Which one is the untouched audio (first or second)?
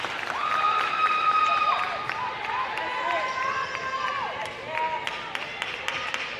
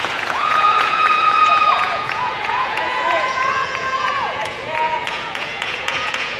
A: first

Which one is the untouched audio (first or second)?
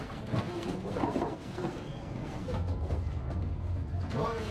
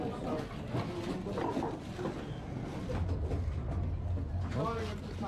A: second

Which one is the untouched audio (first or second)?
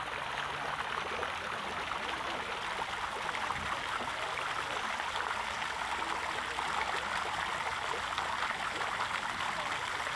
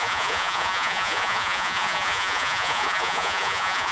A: first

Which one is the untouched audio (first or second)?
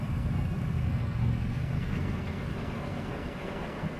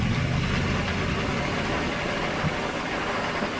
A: second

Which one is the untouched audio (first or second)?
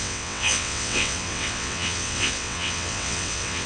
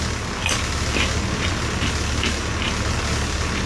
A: second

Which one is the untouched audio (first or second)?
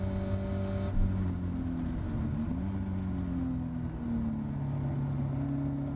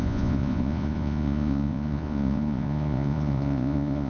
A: first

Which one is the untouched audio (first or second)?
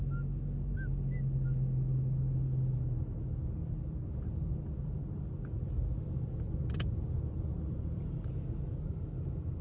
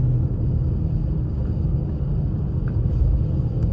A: first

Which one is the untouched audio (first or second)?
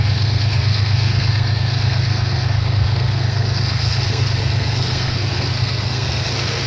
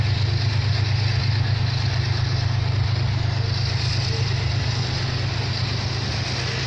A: second